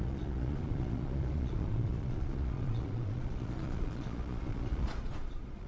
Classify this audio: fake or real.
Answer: fake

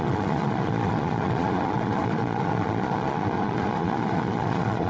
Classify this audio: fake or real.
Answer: fake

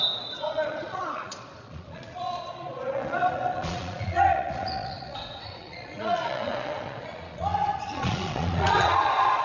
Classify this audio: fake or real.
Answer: fake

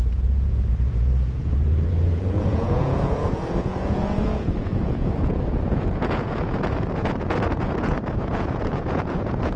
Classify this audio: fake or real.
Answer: fake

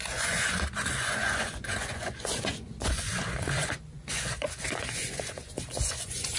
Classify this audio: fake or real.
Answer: fake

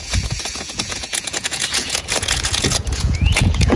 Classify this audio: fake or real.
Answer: fake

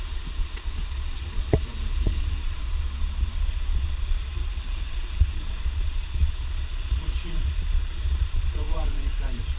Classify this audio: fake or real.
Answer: fake